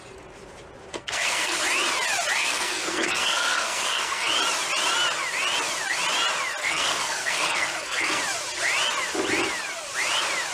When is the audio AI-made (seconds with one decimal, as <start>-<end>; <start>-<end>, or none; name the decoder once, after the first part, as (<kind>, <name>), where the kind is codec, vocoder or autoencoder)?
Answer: 0.9-1.6 (codec, SNAC); 2.4-4.3; 6.6-8.2